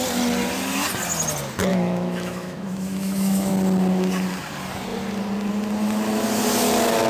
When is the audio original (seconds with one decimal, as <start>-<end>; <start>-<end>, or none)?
0.0-1.7; 3.5-7.1